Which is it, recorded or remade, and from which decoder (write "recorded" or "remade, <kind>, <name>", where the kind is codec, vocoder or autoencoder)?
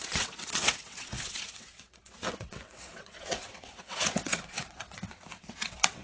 remade, vocoder, WaveNeXt